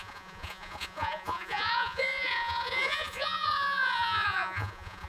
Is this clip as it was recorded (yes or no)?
no